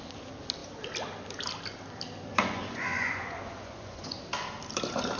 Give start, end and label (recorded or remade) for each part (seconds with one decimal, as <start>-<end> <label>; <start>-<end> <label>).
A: 0.0-2.3 recorded; 2.3-4.2 remade; 4.2-5.2 recorded